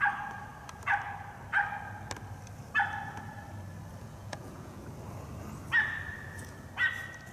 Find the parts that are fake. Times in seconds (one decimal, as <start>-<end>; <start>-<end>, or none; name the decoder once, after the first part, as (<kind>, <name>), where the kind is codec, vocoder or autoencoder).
4.0-4.8 (vocoder, Vocos)

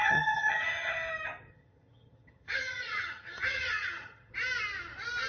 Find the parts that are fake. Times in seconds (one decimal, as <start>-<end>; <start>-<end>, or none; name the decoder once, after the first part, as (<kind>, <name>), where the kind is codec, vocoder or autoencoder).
0.0-0.9 (vocoder, HiFi-GAN); 1.5-4.3

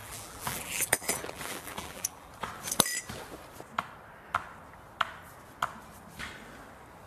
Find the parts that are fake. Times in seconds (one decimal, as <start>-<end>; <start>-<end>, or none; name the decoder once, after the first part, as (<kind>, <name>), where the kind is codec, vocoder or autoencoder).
0.0-2.3 (vocoder, BigVGAN v2)

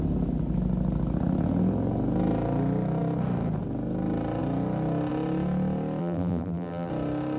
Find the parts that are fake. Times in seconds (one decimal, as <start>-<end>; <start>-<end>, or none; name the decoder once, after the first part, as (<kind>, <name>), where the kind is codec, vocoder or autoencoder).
6.0-6.9 (vocoder, BigVGAN v2)

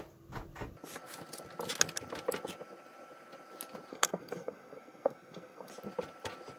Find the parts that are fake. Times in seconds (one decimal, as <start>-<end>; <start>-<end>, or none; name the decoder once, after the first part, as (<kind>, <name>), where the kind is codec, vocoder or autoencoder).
3.9-5.7 (codec, SNAC)

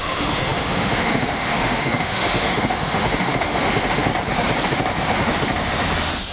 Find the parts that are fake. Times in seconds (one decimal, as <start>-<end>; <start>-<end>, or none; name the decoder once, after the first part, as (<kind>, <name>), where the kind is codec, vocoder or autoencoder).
0.0-4.1 (autoencoder, DAC-VAE)

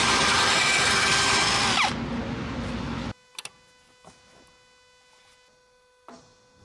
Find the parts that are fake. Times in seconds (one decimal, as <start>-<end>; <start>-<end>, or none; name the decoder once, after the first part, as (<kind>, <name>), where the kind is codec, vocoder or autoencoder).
none

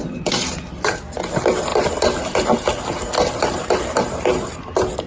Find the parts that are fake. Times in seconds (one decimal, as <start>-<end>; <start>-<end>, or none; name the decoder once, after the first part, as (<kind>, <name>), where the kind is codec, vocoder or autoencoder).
none